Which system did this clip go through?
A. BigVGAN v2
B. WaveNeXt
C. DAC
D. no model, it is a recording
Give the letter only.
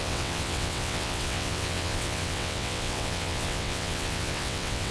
B